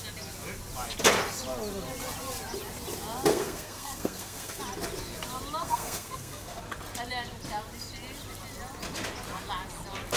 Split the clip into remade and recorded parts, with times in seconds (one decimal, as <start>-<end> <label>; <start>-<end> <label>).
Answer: 0.0-3.3 recorded; 3.3-4.6 remade; 4.6-5.6 recorded; 5.6-6.6 remade; 6.6-10.2 recorded